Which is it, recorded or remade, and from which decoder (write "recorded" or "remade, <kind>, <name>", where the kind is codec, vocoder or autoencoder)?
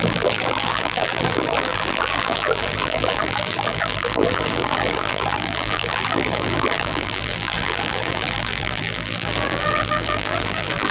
remade, vocoder, BigVGAN v2